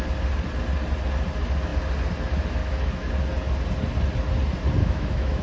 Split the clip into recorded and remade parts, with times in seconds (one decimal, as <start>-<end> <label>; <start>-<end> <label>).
0.0-2.6 recorded; 2.6-3.1 remade; 3.1-4.8 recorded; 4.8-5.4 remade